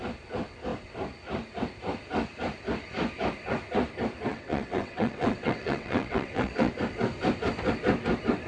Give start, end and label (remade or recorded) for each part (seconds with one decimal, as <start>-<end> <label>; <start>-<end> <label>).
0.0-4.3 recorded; 4.3-6.7 remade; 6.7-8.5 recorded